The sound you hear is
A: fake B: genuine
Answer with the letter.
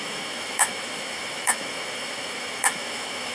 A